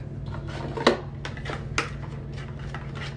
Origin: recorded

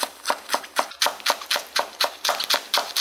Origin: recorded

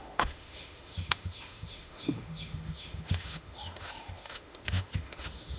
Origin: remade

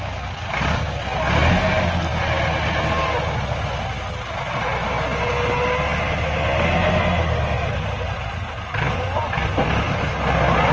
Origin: recorded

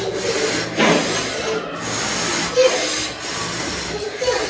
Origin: recorded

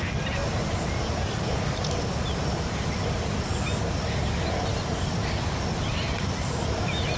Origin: recorded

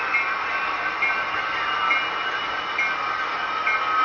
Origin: recorded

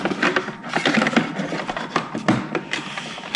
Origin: recorded